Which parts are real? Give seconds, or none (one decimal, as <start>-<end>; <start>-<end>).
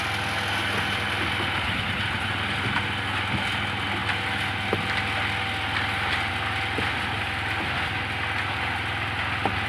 0.0-9.7